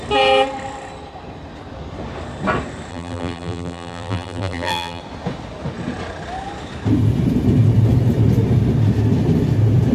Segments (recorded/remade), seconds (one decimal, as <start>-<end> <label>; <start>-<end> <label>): 0.0-2.9 recorded; 2.9-5.0 remade; 5.0-9.9 recorded